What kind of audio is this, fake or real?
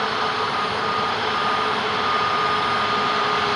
real